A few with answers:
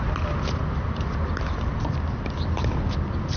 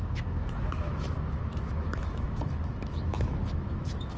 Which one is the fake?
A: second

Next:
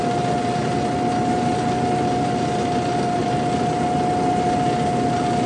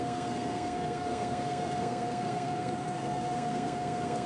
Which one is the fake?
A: second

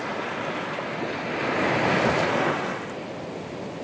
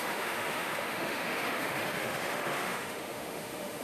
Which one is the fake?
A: second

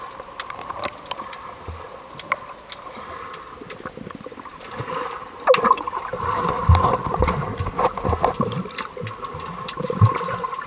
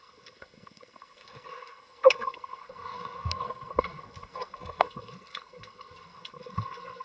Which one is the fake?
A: second